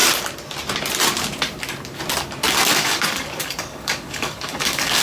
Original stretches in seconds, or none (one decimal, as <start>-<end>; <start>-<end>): 0.0-2.7